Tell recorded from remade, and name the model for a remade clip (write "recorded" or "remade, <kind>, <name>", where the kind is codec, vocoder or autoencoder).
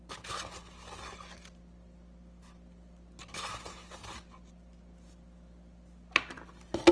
recorded